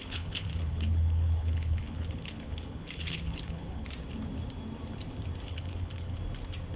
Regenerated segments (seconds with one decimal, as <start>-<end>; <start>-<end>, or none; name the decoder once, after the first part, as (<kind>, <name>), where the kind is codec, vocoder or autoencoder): 0.0-3.9 (codec, HILCodec); 5.5-6.2